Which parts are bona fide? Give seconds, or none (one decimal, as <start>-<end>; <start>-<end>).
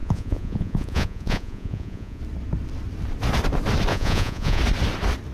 2.2-3.9; 4.6-5.3